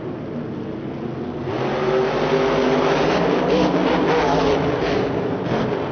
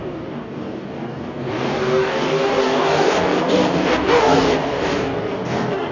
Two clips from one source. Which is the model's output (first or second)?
second